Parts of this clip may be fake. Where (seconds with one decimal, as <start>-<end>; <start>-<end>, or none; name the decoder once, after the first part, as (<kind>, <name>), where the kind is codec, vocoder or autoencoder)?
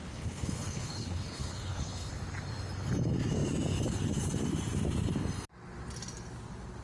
0.0-2.1 (codec, HILCodec)